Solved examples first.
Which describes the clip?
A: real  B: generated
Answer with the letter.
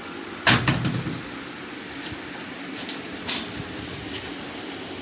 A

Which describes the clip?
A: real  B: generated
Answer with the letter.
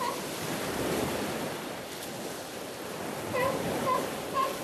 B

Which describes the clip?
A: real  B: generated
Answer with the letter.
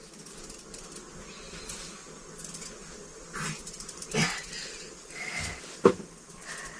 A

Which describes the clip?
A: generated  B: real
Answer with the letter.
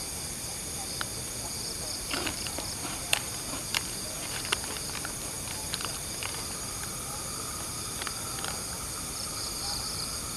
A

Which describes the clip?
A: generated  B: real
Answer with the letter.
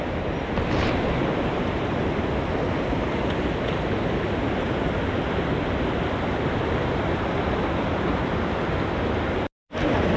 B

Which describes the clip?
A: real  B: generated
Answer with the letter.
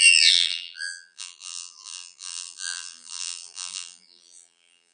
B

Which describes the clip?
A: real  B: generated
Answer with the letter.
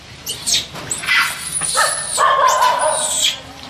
A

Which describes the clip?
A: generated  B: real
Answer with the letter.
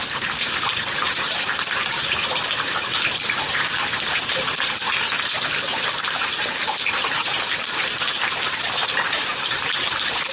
A